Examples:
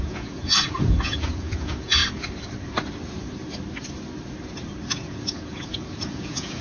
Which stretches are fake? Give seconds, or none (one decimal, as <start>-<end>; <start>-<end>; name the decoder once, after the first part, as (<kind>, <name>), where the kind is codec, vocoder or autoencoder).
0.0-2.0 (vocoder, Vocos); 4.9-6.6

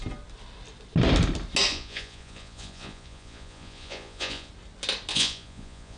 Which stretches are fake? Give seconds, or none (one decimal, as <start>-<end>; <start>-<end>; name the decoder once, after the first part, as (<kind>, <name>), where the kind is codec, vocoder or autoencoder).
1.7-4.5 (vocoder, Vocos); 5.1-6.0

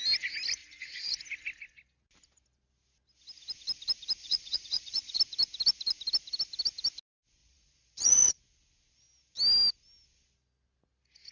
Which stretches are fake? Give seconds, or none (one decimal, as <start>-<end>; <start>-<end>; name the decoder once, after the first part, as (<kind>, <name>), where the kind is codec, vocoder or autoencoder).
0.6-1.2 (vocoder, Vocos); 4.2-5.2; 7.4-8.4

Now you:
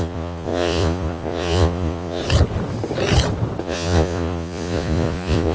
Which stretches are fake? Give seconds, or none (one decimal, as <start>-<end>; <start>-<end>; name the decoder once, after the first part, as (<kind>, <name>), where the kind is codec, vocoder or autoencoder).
0.0-2.2 (vocoder, Vocos); 3.6-5.5

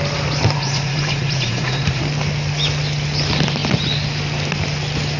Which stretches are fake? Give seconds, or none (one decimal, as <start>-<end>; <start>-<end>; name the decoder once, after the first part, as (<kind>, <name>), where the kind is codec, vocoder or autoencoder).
0.6-2.0 (vocoder, Vocos)

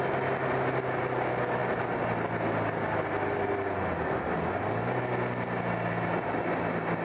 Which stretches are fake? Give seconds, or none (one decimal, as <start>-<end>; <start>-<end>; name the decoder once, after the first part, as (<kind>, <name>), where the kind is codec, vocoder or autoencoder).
none